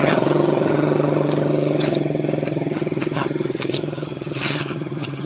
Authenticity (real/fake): fake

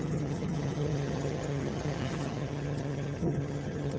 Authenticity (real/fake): fake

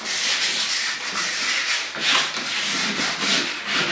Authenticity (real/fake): real